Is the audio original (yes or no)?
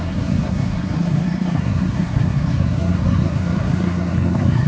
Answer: no